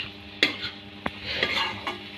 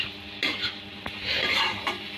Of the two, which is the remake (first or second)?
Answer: second